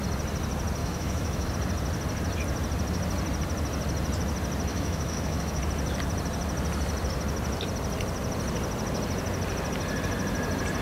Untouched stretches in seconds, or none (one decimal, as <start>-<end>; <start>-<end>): 0.0-0.8; 1.5-4.7; 5.6-10.8